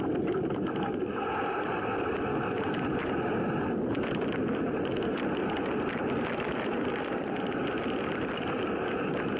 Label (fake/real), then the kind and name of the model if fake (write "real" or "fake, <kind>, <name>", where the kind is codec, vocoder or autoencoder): real